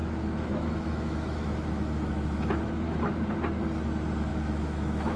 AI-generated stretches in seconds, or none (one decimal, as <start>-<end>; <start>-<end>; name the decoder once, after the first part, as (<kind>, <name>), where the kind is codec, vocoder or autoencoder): 0.0-3.1 (autoencoder, DAC-VAE); 4.3-5.2

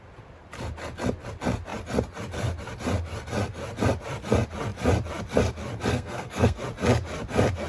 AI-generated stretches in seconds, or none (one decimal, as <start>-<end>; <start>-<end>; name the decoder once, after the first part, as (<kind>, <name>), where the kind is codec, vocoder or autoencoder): 5.9-6.6 (codec, SNAC)

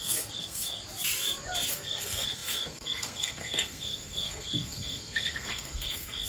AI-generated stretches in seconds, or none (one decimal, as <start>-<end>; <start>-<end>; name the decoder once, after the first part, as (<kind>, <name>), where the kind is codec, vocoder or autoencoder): 0.0-0.8 (codec, SNAC); 1.7-6.3

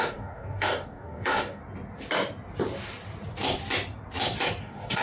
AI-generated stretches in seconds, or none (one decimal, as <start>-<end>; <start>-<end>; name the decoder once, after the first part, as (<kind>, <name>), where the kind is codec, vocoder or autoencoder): 0.0-1.6 (codec, DAC); 4.6-5.0

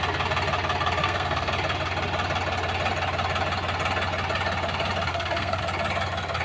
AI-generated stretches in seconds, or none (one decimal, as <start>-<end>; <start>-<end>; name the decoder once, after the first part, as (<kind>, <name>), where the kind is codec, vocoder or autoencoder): 1.0-1.5 (codec, SNAC); 5.1-5.6

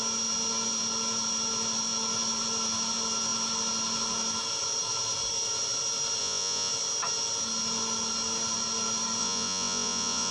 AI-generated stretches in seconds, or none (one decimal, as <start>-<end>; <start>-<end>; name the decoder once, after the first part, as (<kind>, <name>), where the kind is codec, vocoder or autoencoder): 6.2-6.7 (vocoder, Vocos); 9.2-10.3

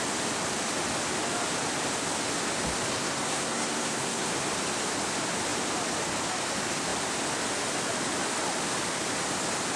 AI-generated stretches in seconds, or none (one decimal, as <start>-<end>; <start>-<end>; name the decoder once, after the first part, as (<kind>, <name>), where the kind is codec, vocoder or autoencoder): 2.9-4.3 (codec, SNAC)

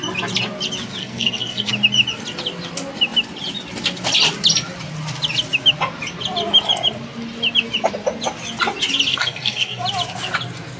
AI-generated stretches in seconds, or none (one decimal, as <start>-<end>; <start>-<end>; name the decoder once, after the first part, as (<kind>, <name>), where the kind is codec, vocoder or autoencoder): 1.0-1.7 (codec, SNAC); 9.1-9.8